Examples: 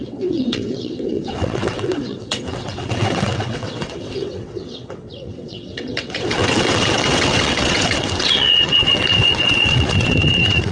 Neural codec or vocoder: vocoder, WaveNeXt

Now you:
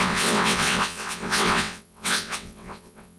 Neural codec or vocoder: vocoder, WaveNeXt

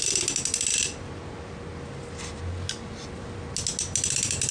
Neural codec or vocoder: none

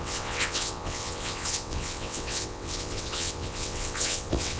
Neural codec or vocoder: vocoder, WaveNeXt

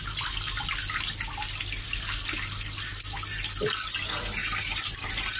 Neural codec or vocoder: none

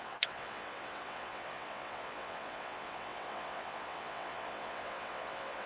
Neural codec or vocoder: vocoder, WaveNeXt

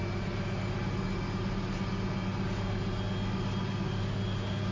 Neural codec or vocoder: none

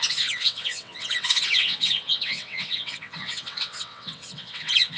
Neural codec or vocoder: vocoder, WaveNeXt